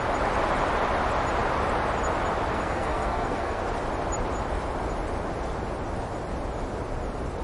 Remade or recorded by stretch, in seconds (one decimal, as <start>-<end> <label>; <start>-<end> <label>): 0.0-2.5 recorded; 2.5-3.6 remade; 3.6-7.4 recorded